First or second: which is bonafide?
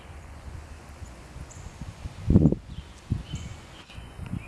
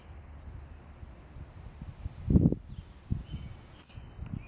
second